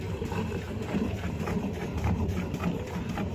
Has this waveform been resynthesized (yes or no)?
yes